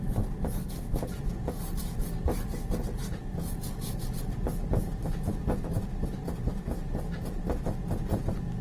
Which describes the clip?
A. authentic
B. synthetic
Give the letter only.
A